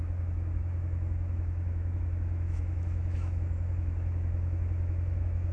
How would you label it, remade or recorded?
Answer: remade